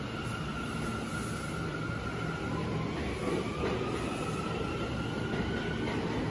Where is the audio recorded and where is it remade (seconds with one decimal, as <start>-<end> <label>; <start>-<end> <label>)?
0.0-6.3 recorded